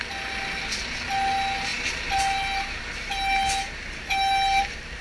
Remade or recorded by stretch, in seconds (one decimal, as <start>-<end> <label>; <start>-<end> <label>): 0.0-5.0 recorded

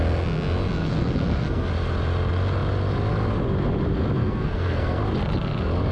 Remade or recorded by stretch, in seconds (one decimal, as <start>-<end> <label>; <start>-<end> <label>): 0.0-0.8 recorded; 0.8-1.7 remade; 1.7-4.2 recorded; 4.2-5.0 remade; 5.0-5.9 recorded

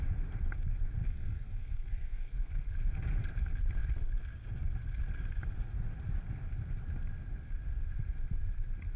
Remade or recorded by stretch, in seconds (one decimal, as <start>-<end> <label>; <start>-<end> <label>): 0.0-1.0 recorded; 1.0-2.5 remade; 2.5-9.0 recorded

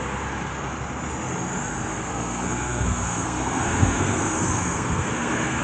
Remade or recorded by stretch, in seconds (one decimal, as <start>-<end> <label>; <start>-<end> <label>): 0.0-1.9 recorded; 1.9-5.6 remade

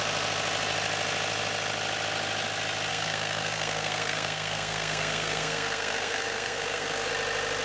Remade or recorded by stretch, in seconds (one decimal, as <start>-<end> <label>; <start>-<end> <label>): 0.0-2.9 recorded; 2.9-7.1 remade; 7.1-7.6 recorded

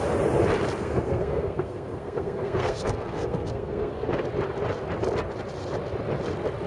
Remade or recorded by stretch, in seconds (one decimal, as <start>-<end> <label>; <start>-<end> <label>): 0.0-0.8 recorded; 0.8-4.2 remade; 4.2-6.7 recorded